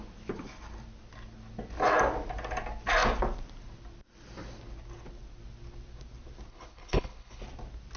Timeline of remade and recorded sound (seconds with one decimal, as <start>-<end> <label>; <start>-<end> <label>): 0.0-6.5 recorded; 6.5-7.4 remade; 7.4-8.0 recorded